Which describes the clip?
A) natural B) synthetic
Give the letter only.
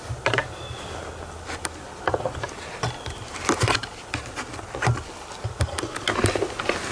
A